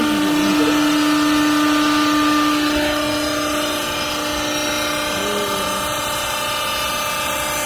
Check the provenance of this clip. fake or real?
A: real